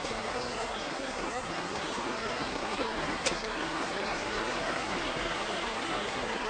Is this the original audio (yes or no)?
no